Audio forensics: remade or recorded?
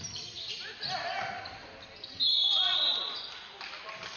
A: recorded